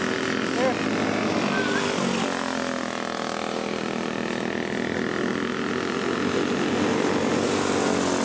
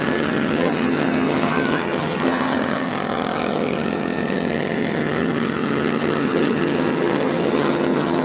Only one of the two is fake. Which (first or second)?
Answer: second